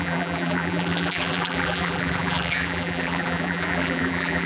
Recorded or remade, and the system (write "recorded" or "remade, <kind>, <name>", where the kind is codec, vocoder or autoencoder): remade, vocoder, BigVGAN v2